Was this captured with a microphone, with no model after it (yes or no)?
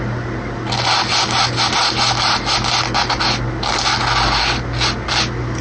yes